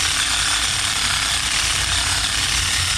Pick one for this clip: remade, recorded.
recorded